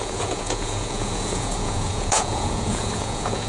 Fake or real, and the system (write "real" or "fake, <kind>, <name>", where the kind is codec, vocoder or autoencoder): fake, vocoder, Vocos